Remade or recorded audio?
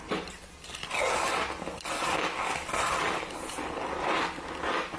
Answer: recorded